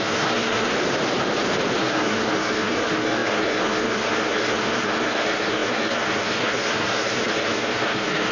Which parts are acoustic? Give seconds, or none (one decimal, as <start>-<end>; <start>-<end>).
0.7-1.8